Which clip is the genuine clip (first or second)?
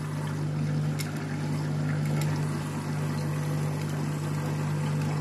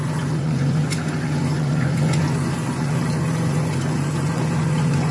first